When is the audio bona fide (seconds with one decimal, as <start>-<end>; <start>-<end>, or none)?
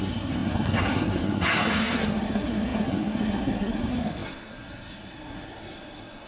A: none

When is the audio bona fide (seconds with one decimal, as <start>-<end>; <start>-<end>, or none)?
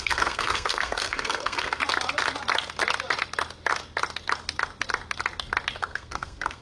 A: 1.8-5.8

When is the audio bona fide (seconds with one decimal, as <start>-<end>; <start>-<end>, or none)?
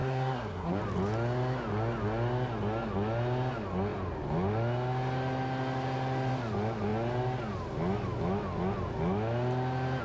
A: 0.8-10.0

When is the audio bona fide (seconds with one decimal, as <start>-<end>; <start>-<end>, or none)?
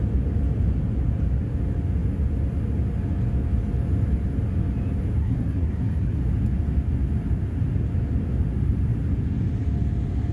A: 0.0-5.2; 6.2-10.3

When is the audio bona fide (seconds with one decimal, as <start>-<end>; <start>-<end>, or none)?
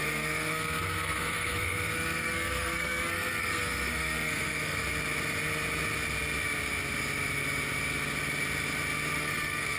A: 4.8-9.2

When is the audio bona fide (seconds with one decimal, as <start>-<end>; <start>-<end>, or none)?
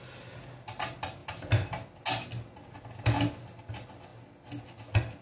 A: 0.0-5.2